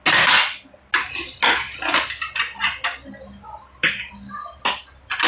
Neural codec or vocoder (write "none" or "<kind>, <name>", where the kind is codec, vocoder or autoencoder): none